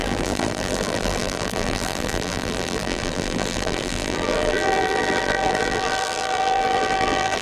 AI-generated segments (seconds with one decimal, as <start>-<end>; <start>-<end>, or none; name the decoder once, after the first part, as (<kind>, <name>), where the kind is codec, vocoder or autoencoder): 0.0-7.4 (vocoder, BigVGAN v2)